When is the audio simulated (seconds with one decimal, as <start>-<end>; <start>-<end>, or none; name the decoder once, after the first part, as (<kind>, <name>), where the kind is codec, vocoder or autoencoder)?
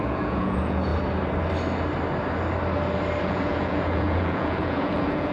0.0-0.9 (vocoder, Vocos); 3.2-5.3